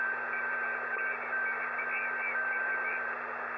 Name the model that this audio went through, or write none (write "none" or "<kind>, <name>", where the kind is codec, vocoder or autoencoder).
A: none